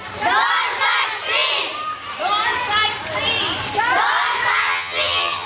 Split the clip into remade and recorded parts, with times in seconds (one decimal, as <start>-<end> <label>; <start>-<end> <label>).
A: 0.0-4.5 recorded; 4.5-5.5 remade